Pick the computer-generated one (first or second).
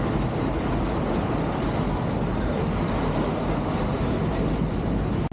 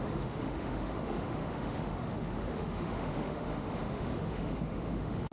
second